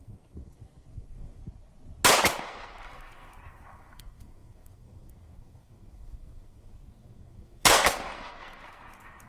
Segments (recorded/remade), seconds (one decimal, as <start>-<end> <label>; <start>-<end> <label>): 0.0-1.4 remade; 1.4-2.4 recorded; 2.4-9.3 remade